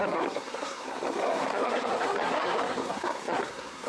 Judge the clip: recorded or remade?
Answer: remade